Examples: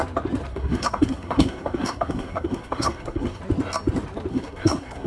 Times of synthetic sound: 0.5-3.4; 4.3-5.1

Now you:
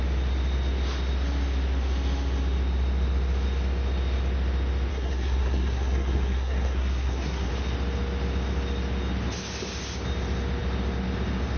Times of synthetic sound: 4.9-7.5

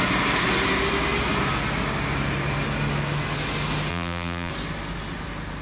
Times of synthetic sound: 3.9-4.5